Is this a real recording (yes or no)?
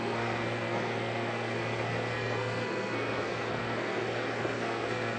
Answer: no